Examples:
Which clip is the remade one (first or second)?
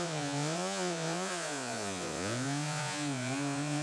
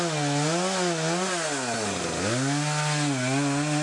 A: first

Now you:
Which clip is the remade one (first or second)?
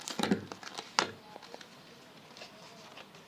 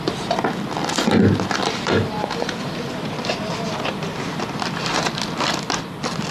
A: second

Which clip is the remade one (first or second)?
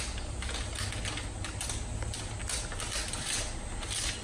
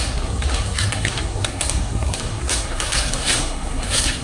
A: second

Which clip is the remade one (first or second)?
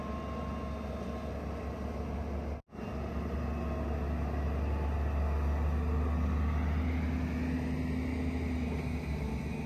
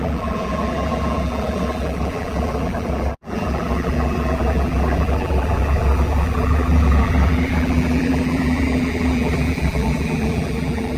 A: second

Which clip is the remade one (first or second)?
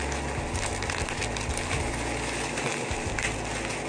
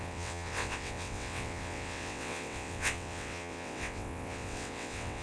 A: second